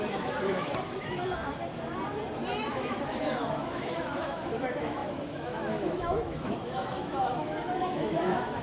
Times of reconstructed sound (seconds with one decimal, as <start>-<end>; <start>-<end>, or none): 0.0-1.6; 2.7-8.6